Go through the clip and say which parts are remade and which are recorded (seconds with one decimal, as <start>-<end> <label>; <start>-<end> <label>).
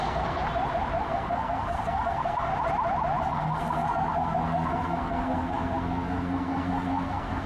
0.0-0.4 remade; 0.4-1.0 recorded; 1.0-2.5 remade; 2.5-3.2 recorded; 3.2-7.5 remade